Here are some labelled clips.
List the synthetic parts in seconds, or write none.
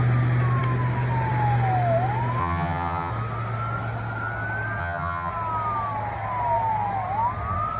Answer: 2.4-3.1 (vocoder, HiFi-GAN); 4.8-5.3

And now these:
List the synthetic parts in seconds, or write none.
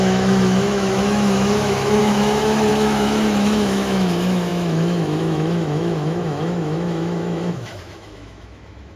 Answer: 0.0-9.0 (autoencoder, DAC-VAE)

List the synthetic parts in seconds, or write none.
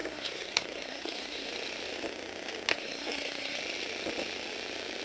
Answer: 0.0-1.5 (codec, SNAC); 2.7-3.6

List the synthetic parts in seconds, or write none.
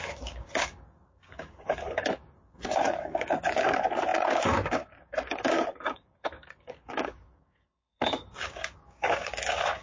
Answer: 0.0-9.8 (codec, DAC)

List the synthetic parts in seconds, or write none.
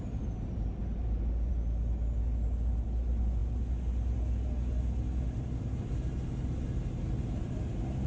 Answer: none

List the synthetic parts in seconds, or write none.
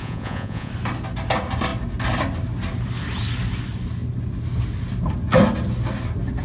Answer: 0.0-0.7 (vocoder, Vocos)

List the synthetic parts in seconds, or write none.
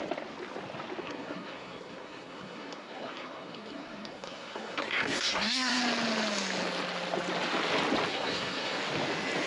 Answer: 1.0-5.8 (codec, SNAC); 8.1-8.8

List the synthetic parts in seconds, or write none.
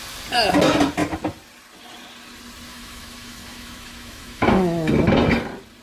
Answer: 2.7-4.9 (autoencoder, DAC-VAE)